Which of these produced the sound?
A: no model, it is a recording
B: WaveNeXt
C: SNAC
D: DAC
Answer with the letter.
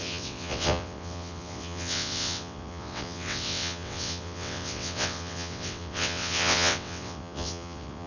B